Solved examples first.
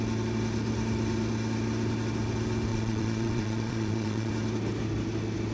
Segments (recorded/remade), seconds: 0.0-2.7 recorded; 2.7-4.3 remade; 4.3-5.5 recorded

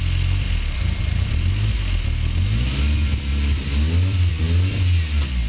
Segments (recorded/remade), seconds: 0.0-5.5 recorded

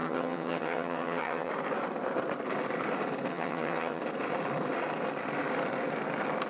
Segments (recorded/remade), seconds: 0.0-1.5 remade; 1.5-3.3 recorded; 3.3-4.0 remade; 4.0-6.5 recorded

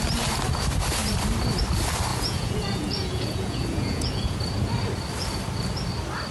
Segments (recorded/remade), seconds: 0.0-2.1 recorded; 2.1-4.4 remade; 4.4-6.3 recorded

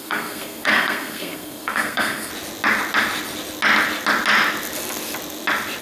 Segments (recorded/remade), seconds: 0.0-2.3 remade; 2.3-5.8 recorded

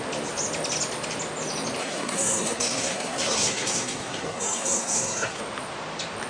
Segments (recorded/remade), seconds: 0.0-1.8 recorded; 1.8-5.4 remade; 5.4-6.3 recorded

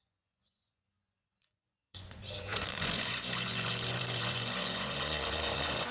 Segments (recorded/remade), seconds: 0.0-5.9 remade

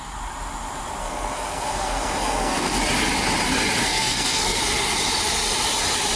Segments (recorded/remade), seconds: 0.0-1.0 recorded; 1.0-2.8 remade; 2.8-3.8 recorded; 3.8-4.6 remade; 4.6-6.2 recorded